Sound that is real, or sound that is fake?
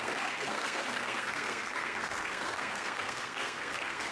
fake